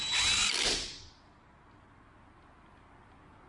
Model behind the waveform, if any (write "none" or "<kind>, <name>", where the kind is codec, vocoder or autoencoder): none